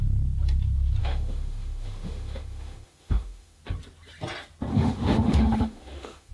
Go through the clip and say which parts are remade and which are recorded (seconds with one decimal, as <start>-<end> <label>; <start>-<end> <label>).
0.0-1.0 recorded; 1.0-3.6 remade; 3.6-4.7 recorded; 4.7-6.3 remade